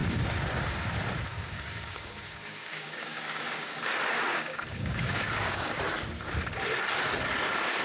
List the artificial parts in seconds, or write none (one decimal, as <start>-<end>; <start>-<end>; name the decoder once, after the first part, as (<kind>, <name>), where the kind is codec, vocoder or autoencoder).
1.3-3.8 (codec, DAC); 4.3-5.8